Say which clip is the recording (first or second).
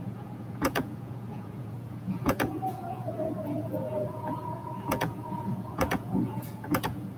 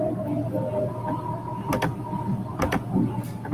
second